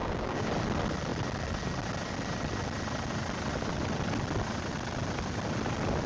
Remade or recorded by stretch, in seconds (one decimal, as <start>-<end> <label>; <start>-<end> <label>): 0.0-0.5 remade; 0.5-6.1 recorded